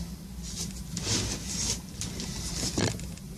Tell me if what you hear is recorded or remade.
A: recorded